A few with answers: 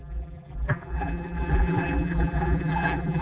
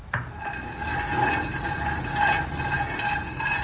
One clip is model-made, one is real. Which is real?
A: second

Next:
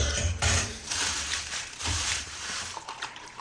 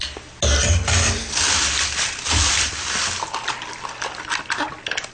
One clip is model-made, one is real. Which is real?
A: second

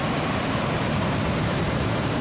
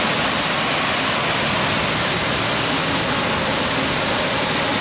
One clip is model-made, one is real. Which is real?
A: second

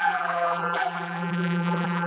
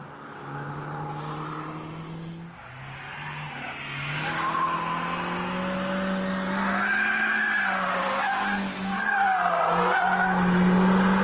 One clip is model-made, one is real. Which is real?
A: second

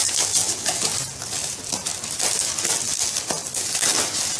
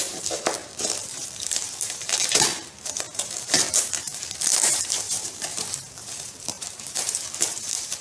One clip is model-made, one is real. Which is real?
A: first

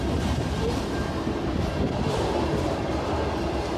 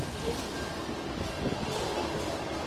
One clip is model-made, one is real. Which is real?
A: second